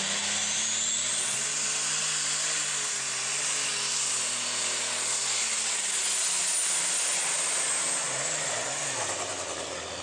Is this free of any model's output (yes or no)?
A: yes